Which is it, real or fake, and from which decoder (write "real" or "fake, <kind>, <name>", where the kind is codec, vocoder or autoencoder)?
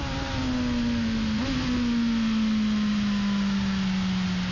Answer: real